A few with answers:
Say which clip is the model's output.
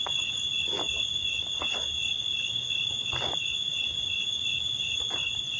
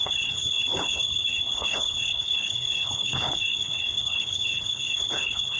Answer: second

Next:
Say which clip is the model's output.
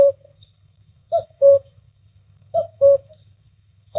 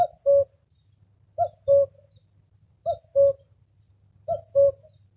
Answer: first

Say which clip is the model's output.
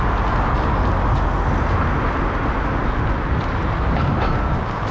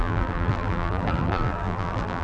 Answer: second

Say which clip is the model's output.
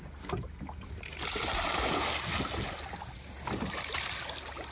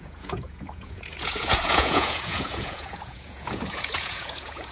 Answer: second